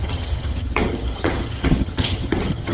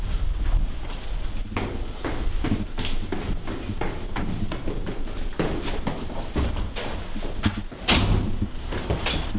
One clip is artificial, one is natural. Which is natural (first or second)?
second